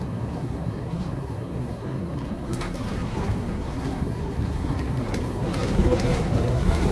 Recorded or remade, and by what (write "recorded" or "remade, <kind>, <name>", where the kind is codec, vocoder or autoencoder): remade, codec, SNAC